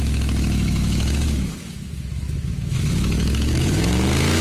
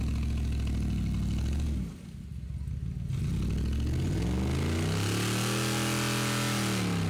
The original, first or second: second